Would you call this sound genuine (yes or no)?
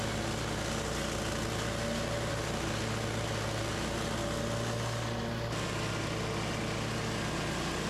yes